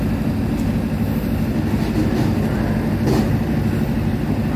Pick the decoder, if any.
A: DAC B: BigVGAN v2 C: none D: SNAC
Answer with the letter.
C